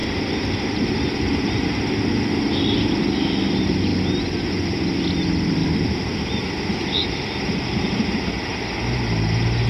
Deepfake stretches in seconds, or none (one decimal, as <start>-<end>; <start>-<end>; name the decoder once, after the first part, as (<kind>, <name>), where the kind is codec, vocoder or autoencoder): 5.6-8.2 (vocoder, BigVGAN v2)